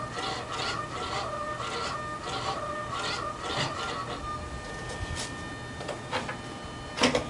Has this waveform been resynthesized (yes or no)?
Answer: no